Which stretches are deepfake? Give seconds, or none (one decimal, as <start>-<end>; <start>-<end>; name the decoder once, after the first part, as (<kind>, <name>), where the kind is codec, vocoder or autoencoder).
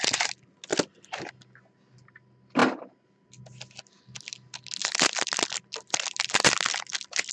none